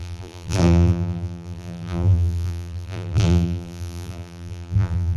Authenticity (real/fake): fake